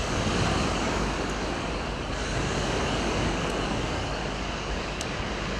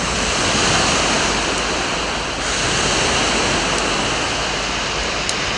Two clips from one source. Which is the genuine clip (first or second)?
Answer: second